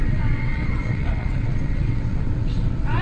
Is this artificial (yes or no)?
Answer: yes